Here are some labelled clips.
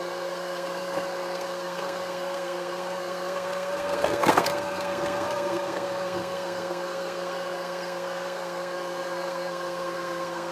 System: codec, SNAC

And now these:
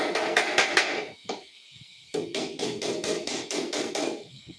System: codec, SNAC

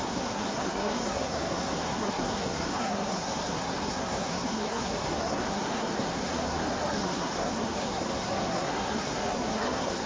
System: codec, SNAC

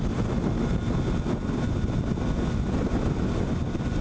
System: none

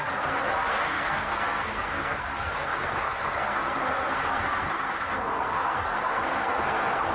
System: codec, SNAC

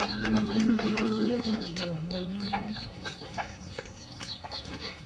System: codec, SNAC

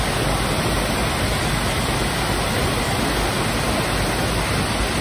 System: none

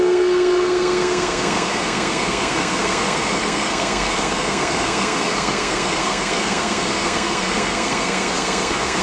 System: codec, SNAC